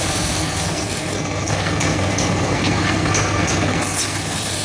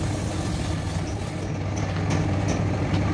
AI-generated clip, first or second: first